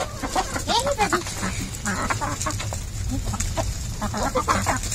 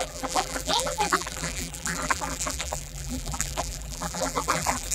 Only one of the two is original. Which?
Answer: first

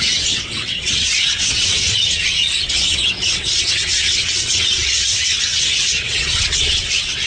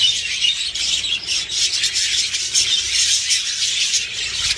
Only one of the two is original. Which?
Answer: second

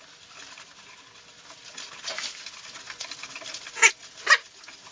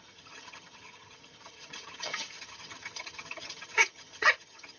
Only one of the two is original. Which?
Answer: first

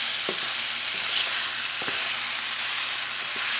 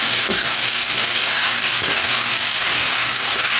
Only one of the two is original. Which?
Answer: first